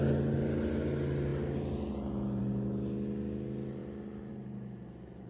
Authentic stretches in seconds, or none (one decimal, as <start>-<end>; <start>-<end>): 0.0-5.3